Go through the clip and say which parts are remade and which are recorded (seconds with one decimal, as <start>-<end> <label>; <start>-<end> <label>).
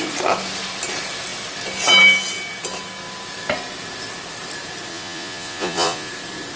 0.0-4.9 recorded; 4.9-6.1 remade; 6.1-6.6 recorded